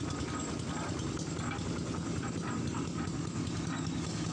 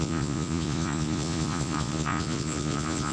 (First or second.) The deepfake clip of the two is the second